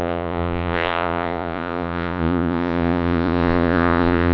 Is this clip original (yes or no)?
no